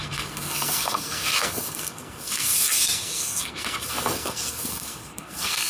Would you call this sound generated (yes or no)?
yes